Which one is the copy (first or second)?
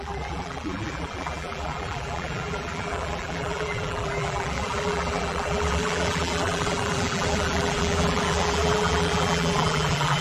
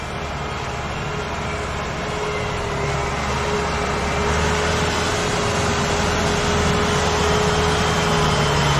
first